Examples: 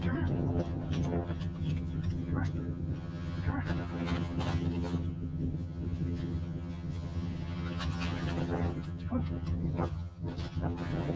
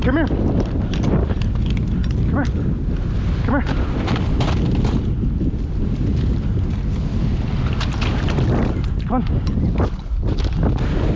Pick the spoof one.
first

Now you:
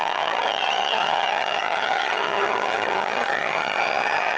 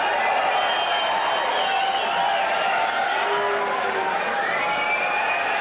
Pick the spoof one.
first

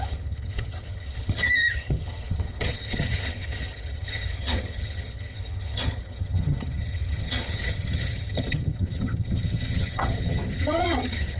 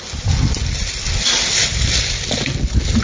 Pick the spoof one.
first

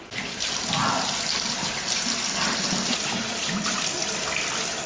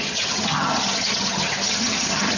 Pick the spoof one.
second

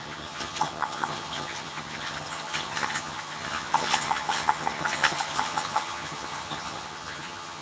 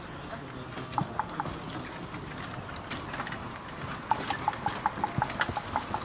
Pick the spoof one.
first